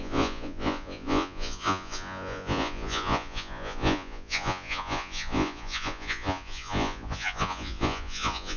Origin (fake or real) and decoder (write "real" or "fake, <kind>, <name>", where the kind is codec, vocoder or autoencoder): fake, vocoder, Vocos